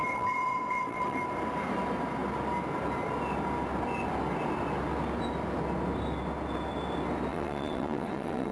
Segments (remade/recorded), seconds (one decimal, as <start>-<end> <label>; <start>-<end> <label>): 0.0-1.2 remade; 1.2-7.3 recorded; 7.3-8.5 remade

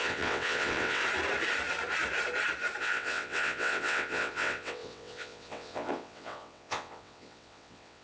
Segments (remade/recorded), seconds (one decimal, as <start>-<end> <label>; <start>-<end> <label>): 0.0-1.0 remade; 1.0-2.8 recorded; 2.8-8.0 remade

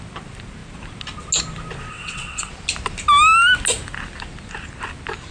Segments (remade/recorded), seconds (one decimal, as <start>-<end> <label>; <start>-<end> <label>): 0.0-1.9 recorded; 1.9-2.5 remade; 2.5-5.3 recorded